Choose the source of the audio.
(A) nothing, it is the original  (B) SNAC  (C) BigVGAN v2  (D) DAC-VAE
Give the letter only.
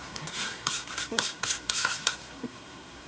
B